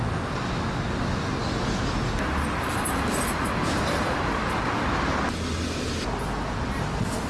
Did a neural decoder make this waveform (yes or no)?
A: no